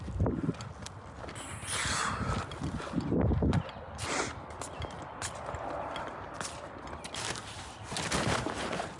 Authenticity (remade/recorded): recorded